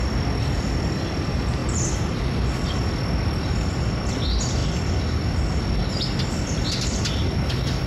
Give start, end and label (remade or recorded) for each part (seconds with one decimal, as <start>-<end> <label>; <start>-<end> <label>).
0.0-1.6 recorded; 1.6-4.1 remade; 4.1-7.9 recorded

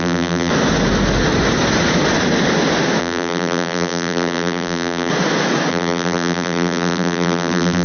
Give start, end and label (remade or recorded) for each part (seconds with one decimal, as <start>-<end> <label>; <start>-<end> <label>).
0.0-0.5 remade; 0.5-3.0 recorded; 3.0-5.1 remade; 5.1-5.7 recorded; 5.7-7.8 remade

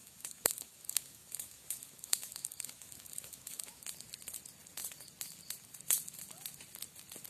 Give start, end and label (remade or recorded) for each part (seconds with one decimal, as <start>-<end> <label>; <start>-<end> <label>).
0.0-3.8 remade; 3.8-7.3 recorded

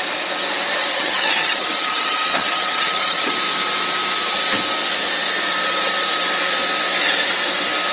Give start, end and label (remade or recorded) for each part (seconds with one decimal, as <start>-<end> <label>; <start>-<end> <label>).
0.0-0.9 recorded; 0.9-3.3 remade; 3.3-7.9 recorded

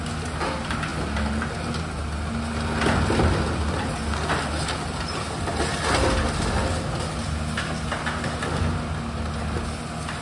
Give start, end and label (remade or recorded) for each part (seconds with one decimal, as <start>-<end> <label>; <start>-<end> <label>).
0.0-10.2 recorded

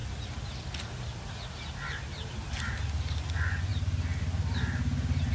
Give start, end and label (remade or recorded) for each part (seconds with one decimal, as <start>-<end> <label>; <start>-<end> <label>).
0.0-3.2 recorded; 3.2-3.7 remade; 3.7-5.3 recorded

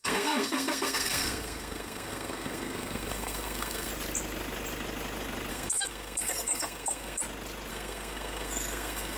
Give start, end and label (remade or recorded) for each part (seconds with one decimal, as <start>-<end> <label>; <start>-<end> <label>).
0.0-3.9 remade; 3.9-5.5 recorded; 5.5-7.2 remade; 7.2-7.7 recorded; 7.7-9.2 remade